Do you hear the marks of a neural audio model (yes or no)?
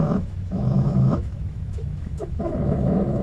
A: yes